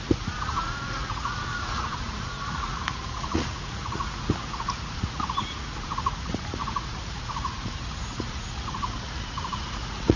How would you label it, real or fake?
fake